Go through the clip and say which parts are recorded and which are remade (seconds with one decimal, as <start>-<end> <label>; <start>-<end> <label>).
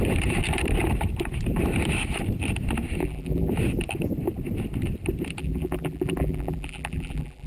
0.0-3.0 recorded; 3.0-3.5 remade; 3.5-5.4 recorded; 5.4-7.5 remade